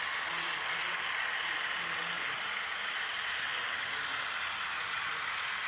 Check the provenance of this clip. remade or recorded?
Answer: recorded